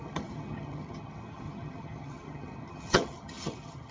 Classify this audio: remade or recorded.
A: remade